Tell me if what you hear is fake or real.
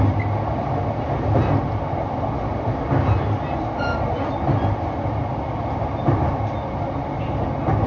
real